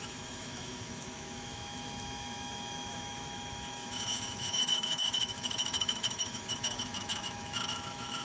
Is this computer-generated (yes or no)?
yes